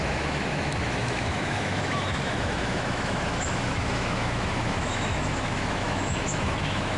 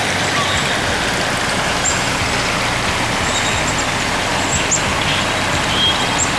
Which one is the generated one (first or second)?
first